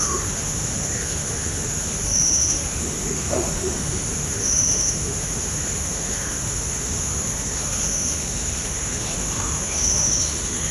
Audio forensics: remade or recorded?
remade